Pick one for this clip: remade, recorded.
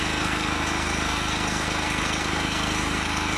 remade